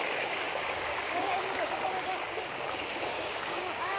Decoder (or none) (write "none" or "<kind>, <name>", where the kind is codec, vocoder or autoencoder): codec, DAC